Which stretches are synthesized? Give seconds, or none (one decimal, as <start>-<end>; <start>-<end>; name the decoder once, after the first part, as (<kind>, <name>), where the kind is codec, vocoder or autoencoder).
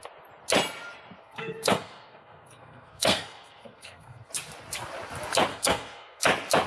1.2-4.3 (codec, SNAC); 5.5-6.2